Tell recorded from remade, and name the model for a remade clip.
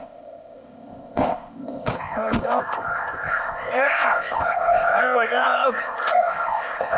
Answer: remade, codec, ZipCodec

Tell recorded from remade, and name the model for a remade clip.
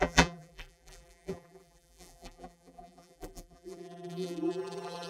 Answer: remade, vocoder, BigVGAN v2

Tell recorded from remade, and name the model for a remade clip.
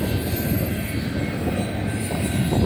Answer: recorded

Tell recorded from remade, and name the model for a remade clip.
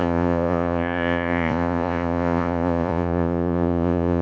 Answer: remade, vocoder, Vocos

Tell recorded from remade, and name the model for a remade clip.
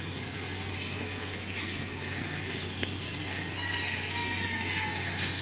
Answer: remade, codec, SNAC